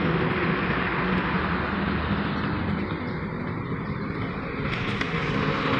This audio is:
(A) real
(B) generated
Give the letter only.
A